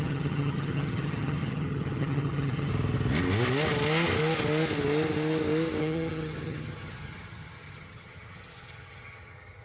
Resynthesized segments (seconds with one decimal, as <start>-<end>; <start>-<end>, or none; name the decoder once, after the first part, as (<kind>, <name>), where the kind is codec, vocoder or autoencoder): 0.0-2.7 (vocoder, HiFi-GAN); 5.8-9.6